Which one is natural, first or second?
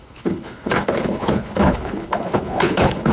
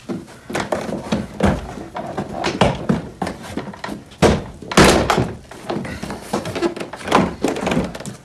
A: second